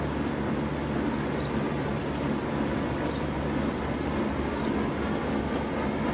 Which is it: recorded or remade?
recorded